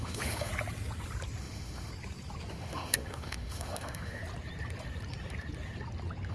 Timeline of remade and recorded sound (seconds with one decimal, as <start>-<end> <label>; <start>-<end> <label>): 0.0-0.5 remade; 0.5-1.4 recorded; 1.4-1.9 remade; 1.9-2.5 recorded; 2.5-4.2 remade; 4.2-6.3 recorded